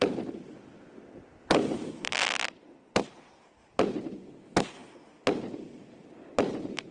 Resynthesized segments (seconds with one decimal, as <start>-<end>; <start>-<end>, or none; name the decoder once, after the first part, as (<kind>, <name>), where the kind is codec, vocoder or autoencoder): none